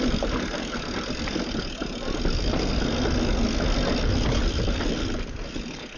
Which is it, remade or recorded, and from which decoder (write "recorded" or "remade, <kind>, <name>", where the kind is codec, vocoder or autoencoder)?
recorded